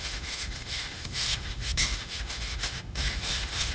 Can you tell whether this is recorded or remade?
remade